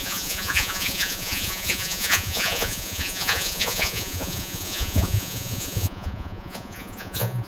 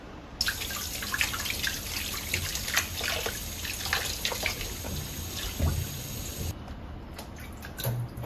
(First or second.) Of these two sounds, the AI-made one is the first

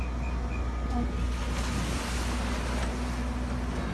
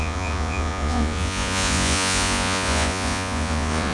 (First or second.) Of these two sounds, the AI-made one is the second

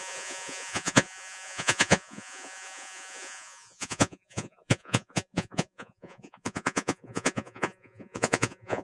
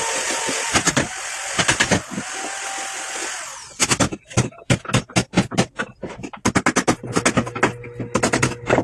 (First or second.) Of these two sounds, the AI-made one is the first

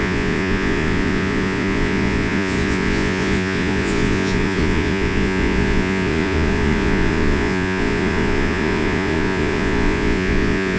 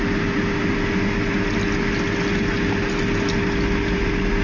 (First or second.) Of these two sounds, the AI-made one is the first